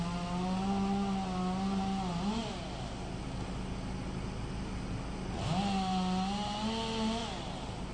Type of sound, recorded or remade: recorded